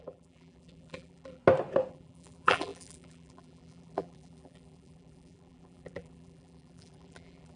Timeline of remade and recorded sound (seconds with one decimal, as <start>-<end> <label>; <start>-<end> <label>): 0.0-1.4 remade; 1.4-1.9 recorded; 1.9-7.6 remade